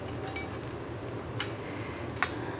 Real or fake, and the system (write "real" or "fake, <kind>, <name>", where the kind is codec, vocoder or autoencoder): real